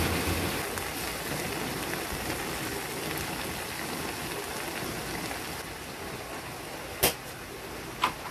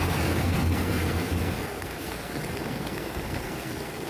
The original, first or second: first